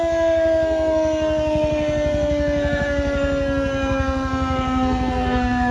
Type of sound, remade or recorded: remade